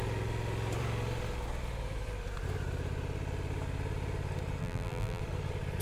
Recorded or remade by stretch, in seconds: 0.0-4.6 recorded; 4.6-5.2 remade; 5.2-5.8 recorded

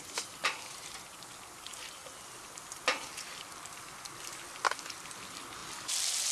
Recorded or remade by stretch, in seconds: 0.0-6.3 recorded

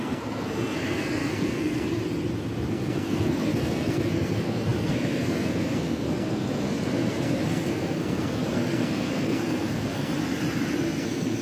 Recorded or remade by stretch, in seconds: 0.0-2.0 remade; 2.0-2.7 recorded; 2.7-10.1 remade; 10.1-10.8 recorded; 10.8-11.4 remade

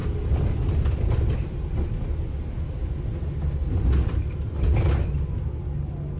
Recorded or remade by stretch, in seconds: 0.0-6.2 recorded

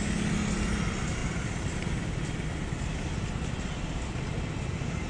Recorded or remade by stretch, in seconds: 0.0-5.1 recorded

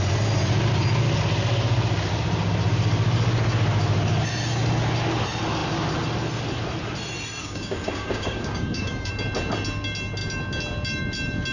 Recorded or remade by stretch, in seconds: 0.0-7.4 recorded; 7.4-9.1 remade; 9.1-11.5 recorded

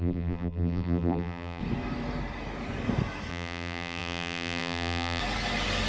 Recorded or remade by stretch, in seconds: 0.0-1.6 remade; 1.6-3.3 recorded; 3.3-5.2 remade; 5.2-5.9 recorded

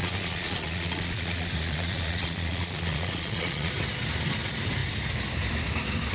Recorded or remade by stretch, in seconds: 0.0-3.7 remade; 3.7-6.1 recorded